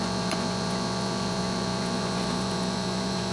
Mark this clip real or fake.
fake